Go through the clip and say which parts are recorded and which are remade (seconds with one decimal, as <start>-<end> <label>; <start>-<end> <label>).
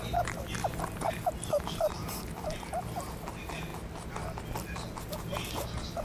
0.0-0.6 recorded; 0.6-2.3 remade; 2.3-6.0 recorded